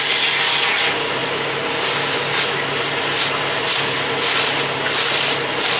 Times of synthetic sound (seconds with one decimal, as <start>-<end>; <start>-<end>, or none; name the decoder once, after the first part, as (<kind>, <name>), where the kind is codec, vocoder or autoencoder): none